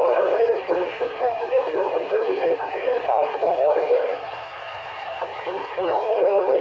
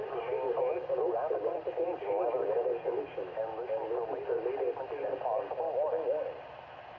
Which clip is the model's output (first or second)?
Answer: first